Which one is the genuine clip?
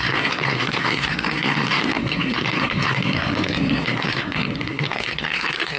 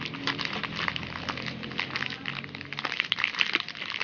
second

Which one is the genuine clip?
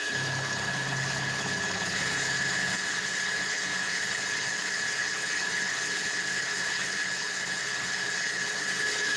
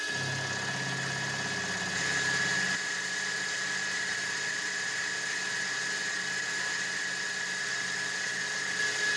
second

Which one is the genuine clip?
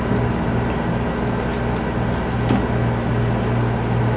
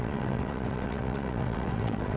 first